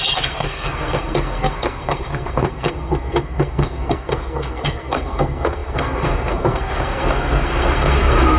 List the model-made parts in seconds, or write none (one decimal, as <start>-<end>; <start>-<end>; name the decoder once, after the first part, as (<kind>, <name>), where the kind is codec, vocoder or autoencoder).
0.0-8.4 (codec, SNAC)